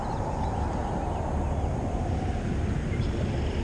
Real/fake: real